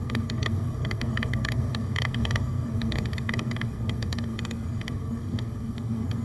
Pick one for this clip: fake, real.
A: fake